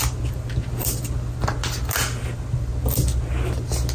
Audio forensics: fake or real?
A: real